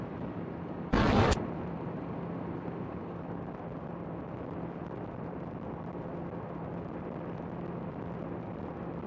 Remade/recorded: recorded